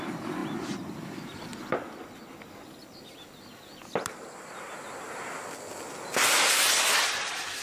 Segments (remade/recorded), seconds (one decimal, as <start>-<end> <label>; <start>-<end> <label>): 0.0-7.6 recorded